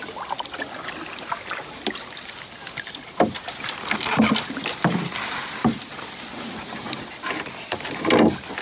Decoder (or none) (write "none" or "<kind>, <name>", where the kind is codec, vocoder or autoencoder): none